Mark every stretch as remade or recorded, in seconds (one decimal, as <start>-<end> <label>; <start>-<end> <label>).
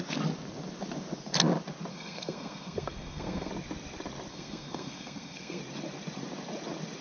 0.0-1.9 recorded; 1.9-3.5 remade; 3.5-4.3 recorded; 4.3-5.6 remade; 5.6-7.0 recorded